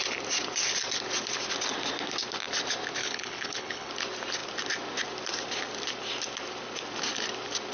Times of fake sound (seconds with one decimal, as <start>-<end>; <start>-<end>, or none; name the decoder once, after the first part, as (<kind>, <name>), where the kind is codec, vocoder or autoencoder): 3.0-3.9 (codec, HILCodec)